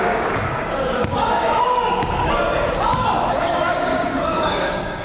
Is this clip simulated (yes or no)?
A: yes